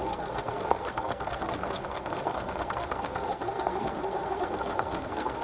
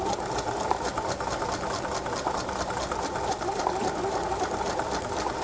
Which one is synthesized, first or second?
first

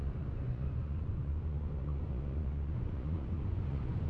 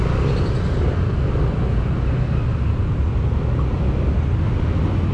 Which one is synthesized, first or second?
first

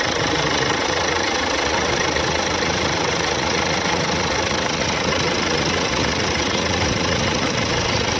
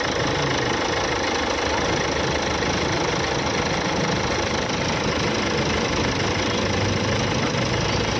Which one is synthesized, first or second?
first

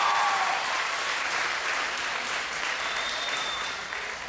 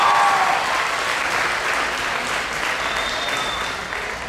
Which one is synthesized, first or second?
first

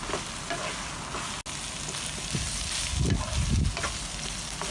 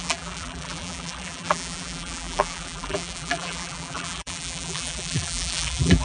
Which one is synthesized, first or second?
second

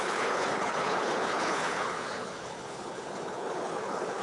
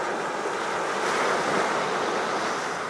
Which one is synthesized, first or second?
first